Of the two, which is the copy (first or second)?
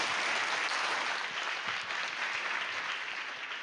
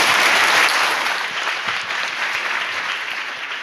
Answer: second